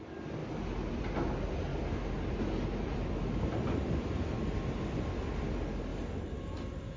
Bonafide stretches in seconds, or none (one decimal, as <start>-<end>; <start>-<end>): 0.0-7.0